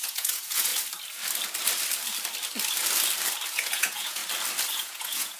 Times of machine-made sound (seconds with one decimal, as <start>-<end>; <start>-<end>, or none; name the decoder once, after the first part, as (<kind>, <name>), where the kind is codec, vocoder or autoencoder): 0.0-0.7 (vocoder, Vocos); 3.5-4.2; 4.7-5.4